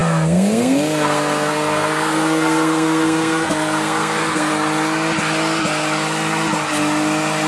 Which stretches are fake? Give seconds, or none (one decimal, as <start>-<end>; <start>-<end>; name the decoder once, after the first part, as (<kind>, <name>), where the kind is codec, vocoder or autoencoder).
0.0-4.5 (codec, SNAC)